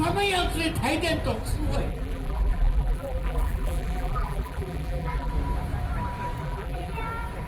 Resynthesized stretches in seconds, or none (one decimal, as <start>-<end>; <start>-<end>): 1.9-5.3; 6.4-7.0